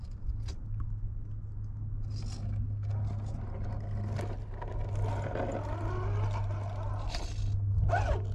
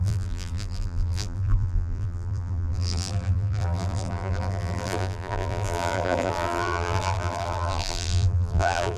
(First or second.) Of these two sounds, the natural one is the first